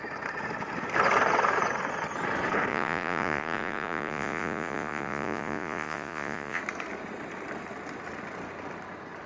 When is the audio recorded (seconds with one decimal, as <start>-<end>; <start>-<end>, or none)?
0.0-2.7; 6.6-9.3

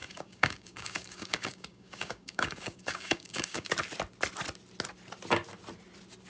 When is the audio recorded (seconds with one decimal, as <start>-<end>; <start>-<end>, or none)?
3.7-6.3

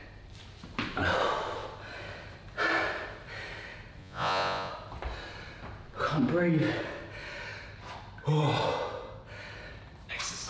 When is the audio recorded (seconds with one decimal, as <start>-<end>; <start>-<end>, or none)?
0.0-4.0; 4.7-10.5